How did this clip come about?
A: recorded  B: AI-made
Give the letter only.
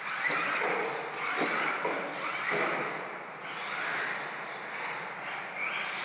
A